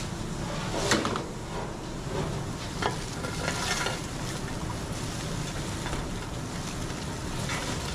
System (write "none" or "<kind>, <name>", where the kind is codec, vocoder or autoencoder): none